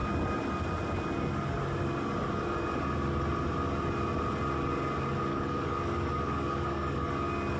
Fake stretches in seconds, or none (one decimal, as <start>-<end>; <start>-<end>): 5.3-7.1